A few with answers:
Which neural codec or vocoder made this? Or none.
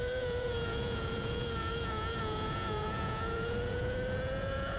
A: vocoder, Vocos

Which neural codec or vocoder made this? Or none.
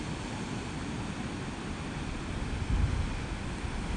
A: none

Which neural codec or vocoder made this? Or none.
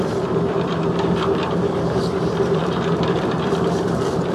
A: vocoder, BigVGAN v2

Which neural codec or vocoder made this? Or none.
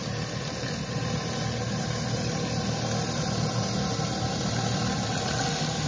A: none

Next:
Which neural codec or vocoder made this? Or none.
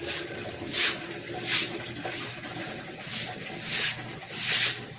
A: none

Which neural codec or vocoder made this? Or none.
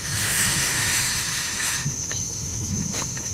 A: autoencoder, DAC-VAE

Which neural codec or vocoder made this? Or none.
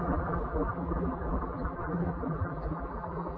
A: vocoder, BigVGAN v2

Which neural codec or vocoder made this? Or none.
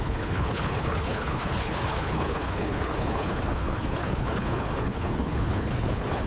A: codec, HILCodec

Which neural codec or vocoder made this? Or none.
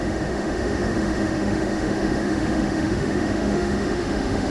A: autoencoder, DAC-VAE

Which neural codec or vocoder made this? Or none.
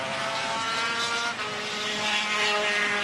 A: none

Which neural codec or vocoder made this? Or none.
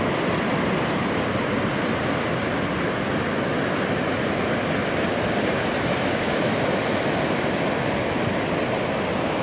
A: none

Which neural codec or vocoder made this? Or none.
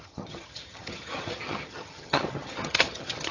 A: vocoder, HiFi-GAN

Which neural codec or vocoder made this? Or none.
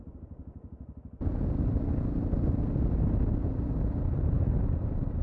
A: none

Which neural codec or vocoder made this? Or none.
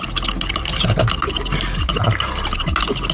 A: none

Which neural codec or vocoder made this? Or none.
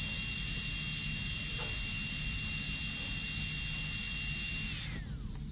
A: none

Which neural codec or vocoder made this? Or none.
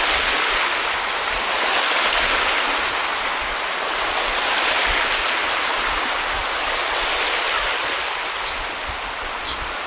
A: none